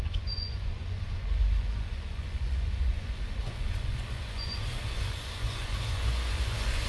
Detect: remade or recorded remade